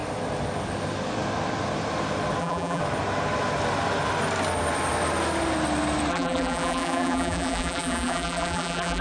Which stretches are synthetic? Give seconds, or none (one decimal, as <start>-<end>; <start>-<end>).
2.4-2.8; 6.1-9.0